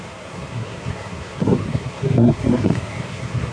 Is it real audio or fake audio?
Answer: fake